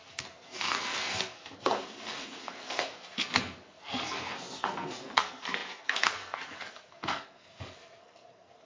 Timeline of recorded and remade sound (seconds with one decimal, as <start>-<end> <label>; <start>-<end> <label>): 0.0-8.7 remade